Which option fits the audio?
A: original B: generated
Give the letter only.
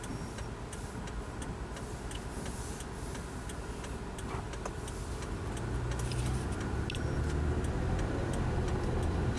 A